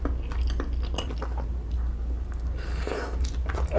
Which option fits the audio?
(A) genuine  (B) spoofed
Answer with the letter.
A